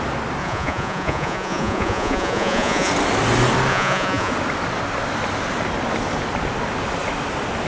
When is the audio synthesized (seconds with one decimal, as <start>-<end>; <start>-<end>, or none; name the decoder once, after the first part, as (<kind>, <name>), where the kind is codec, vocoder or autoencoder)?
0.4-2.9 (vocoder, Vocos); 3.7-4.3